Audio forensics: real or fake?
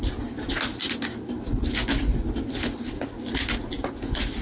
real